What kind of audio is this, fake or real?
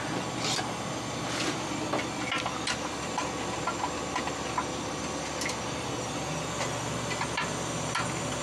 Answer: real